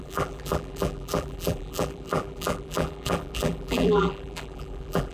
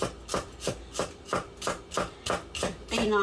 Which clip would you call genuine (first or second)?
second